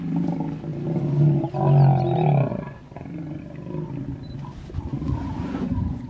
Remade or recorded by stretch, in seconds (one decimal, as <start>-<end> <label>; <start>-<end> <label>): 0.0-2.5 recorded; 2.5-3.4 remade; 3.4-4.9 recorded; 4.9-6.1 remade